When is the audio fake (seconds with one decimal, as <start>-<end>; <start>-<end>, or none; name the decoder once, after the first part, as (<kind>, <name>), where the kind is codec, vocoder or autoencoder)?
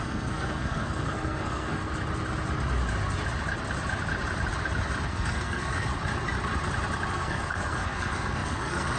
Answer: 0.0-1.9 (codec, SNAC); 5.1-5.9; 7.1-9.0